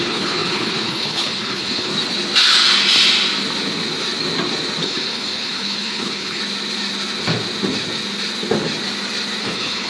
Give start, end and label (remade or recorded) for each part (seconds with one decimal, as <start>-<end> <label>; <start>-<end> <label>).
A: 0.0-1.9 remade; 1.9-4.8 recorded; 4.8-6.4 remade; 6.4-9.4 recorded; 9.4-9.9 remade